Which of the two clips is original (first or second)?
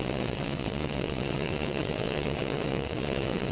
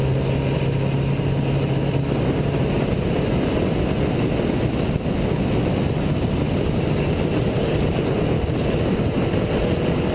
second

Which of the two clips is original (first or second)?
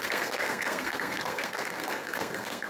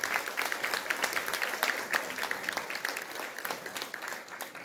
second